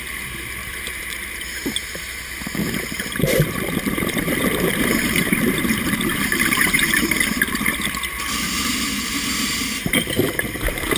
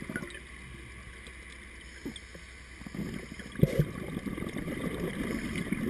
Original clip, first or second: second